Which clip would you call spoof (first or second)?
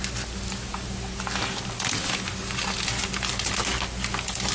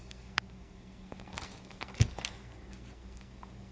second